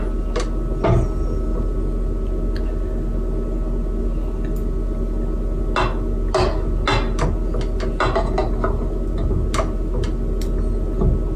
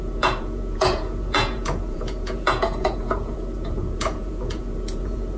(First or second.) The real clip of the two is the first